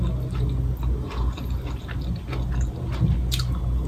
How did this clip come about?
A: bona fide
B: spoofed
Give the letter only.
A